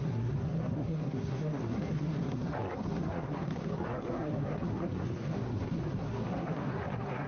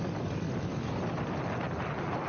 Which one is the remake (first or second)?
first